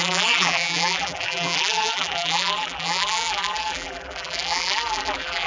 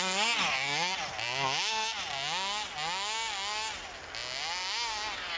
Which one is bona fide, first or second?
second